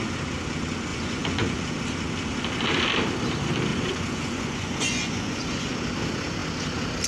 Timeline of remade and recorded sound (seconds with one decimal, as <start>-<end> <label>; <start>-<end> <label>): 0.0-0.9 recorded; 0.9-1.7 remade; 1.7-3.7 recorded; 3.7-5.7 remade; 5.7-7.1 recorded